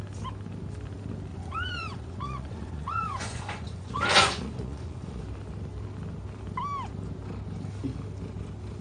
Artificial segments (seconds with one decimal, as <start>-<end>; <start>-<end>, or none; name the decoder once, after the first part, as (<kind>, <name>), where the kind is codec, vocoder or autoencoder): 1.3-5.2 (vocoder, Vocos)